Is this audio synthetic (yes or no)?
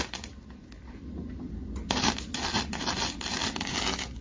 no